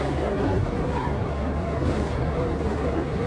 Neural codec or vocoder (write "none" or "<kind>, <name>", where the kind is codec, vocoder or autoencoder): codec, SNAC